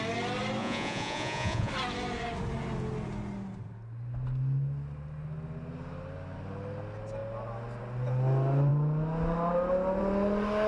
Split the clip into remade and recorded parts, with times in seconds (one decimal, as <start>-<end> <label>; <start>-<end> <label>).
0.0-0.6 recorded; 0.6-1.7 remade; 1.7-10.7 recorded